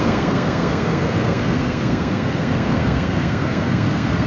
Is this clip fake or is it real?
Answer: fake